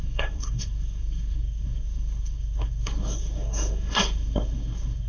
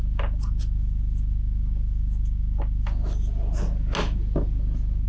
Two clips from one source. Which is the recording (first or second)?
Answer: second